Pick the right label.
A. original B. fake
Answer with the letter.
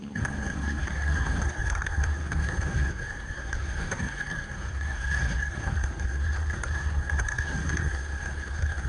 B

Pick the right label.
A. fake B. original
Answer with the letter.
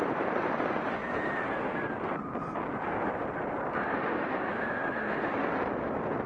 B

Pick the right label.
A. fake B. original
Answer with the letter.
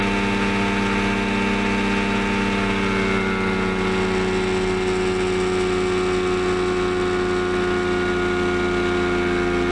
B